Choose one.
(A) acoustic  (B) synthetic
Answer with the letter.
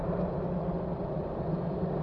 A